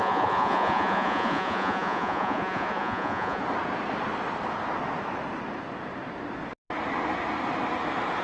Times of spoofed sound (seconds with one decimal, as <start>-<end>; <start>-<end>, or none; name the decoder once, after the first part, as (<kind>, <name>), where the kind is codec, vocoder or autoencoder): 0.0-3.4 (vocoder, Vocos)